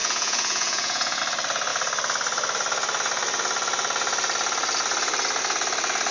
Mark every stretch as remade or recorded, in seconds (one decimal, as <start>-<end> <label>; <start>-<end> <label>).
0.0-1.2 remade; 1.2-6.1 recorded